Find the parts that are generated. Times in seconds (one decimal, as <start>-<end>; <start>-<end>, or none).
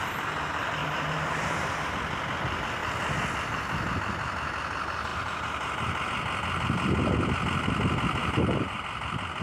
0.8-1.9; 5.1-6.1; 8.2-8.8